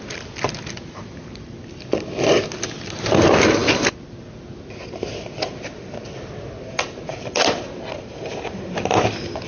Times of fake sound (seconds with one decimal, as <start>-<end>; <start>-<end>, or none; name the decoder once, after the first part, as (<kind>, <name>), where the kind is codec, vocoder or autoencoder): none